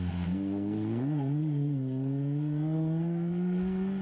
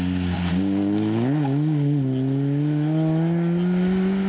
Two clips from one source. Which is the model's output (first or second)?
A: first